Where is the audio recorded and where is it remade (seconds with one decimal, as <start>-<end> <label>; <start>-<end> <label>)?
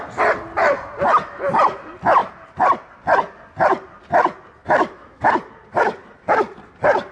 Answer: 0.0-4.6 recorded; 4.6-5.3 remade; 5.3-7.1 recorded